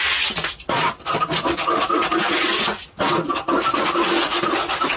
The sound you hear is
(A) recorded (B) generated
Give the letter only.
A